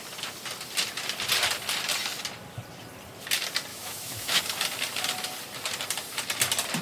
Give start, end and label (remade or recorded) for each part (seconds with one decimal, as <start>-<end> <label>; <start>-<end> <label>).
0.0-3.7 recorded; 3.7-4.4 remade; 4.4-6.8 recorded